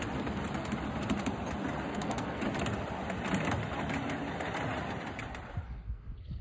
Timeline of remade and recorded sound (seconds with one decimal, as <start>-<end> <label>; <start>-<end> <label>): 0.0-1.9 recorded; 1.9-2.4 remade; 2.4-5.6 recorded; 5.6-6.4 remade